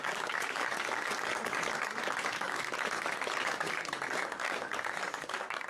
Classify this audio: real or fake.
fake